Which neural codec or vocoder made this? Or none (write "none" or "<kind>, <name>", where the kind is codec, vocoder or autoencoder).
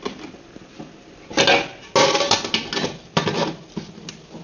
none